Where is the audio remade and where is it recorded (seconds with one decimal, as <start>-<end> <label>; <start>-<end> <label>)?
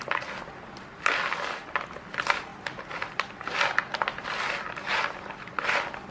0.0-6.1 recorded